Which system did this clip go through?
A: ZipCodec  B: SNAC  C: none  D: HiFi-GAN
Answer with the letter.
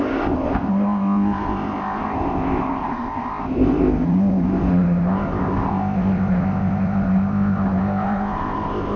A